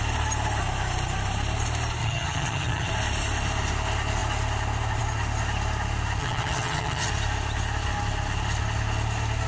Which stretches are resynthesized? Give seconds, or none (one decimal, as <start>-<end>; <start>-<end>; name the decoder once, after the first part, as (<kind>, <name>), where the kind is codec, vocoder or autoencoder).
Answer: 2.0-2.9 (vocoder, HiFi-GAN); 6.2-7.1